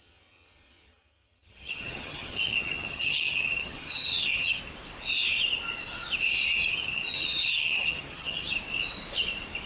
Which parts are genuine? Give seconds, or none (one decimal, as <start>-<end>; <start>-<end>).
4.6-6.7; 8.5-9.7